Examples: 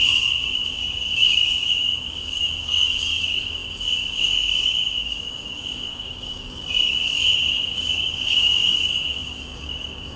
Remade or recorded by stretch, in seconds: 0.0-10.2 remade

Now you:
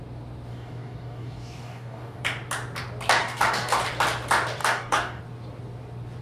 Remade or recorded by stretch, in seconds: 0.0-0.5 recorded; 0.5-2.2 remade; 2.2-3.2 recorded; 3.2-3.8 remade; 3.8-4.6 recorded; 4.6-5.2 remade; 5.2-6.2 recorded